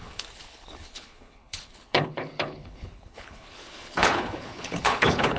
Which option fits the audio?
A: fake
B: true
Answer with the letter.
A